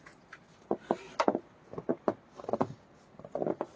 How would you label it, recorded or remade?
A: recorded